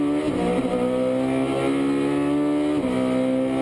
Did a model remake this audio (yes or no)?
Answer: no